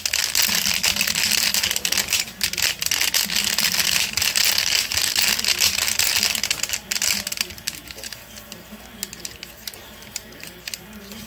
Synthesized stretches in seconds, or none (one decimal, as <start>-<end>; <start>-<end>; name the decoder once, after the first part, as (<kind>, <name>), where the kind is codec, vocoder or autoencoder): 9.8-10.8 (vocoder, BigVGAN v2)